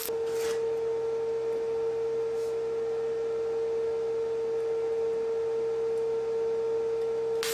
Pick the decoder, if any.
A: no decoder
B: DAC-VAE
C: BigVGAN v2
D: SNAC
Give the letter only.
A